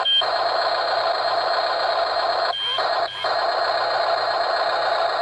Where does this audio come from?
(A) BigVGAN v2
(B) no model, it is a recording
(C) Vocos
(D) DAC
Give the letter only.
B